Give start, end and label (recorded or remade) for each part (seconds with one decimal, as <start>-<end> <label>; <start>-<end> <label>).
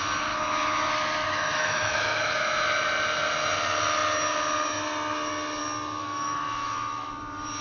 0.0-1.2 recorded; 1.2-2.2 remade; 2.2-6.0 recorded; 6.0-7.1 remade; 7.1-7.6 recorded